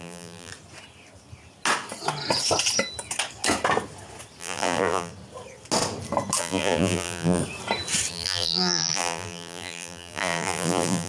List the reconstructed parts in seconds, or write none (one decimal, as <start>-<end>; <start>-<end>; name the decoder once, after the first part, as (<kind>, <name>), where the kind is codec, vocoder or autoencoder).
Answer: 0.0-0.5 (vocoder, BigVGAN v2); 4.4-5.1; 6.4-7.4; 8.1-11.1